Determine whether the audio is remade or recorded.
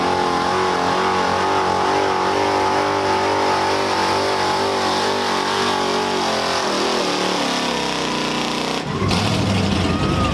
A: recorded